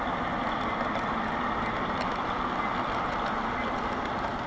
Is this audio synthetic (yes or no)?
no